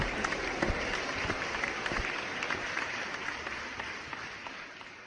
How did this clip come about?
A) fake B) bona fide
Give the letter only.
B